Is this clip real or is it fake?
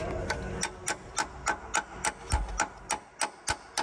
real